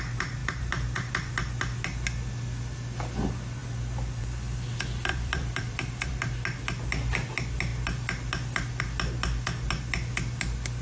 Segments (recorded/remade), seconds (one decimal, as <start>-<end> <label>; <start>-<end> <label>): 0.0-0.4 recorded; 0.4-1.1 remade; 1.1-5.1 recorded; 5.1-6.2 remade; 6.2-10.8 recorded